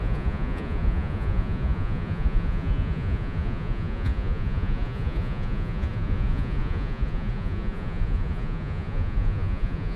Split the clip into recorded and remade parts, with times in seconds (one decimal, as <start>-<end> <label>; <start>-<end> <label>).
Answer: 0.0-10.0 remade